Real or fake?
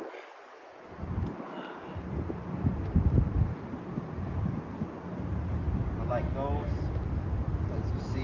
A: real